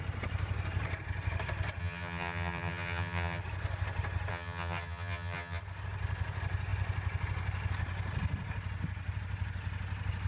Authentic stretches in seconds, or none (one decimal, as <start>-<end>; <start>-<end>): 0.0-1.8; 3.4-4.3; 5.6-10.3